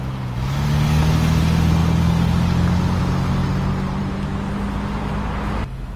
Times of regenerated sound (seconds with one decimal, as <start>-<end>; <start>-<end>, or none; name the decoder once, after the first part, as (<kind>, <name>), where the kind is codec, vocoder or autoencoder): none